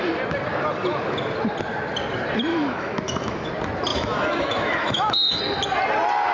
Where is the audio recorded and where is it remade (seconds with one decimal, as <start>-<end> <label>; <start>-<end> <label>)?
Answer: 0.0-2.5 recorded; 2.5-3.5 remade; 3.5-3.9 recorded; 3.9-5.4 remade; 5.4-6.3 recorded